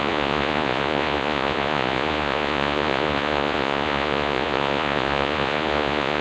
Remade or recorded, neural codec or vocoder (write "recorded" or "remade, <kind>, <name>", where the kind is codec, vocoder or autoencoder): remade, vocoder, Vocos